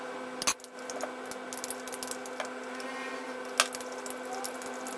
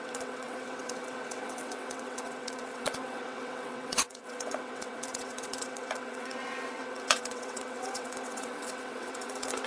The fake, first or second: second